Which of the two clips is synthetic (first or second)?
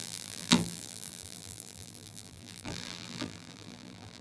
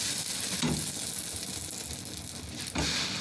first